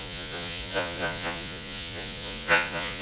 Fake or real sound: fake